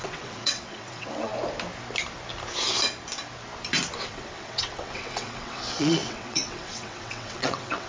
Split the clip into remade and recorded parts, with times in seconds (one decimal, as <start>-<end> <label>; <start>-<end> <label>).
0.0-1.3 remade; 1.3-4.0 recorded; 4.0-7.9 remade